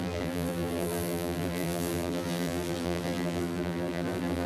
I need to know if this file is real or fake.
fake